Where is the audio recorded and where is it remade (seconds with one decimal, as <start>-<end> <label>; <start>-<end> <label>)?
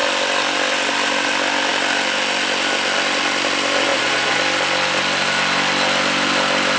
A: 0.0-3.9 recorded; 3.9-4.4 remade; 4.4-6.8 recorded